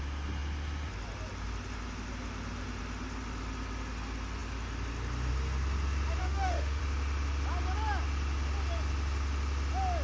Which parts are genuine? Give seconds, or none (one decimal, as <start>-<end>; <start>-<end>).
0.0-6.2; 6.8-10.0